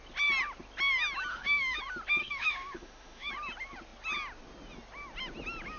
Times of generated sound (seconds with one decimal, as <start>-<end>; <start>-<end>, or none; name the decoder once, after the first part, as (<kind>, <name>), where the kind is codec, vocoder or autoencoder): 1.3-1.8 (autoencoder, DAC-VAE); 2.2-3.3